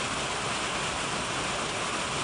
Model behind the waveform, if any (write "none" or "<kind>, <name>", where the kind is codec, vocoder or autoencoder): none